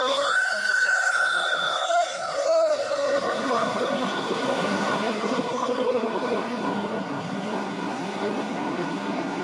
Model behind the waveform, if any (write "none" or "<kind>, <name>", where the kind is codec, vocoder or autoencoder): codec, SNAC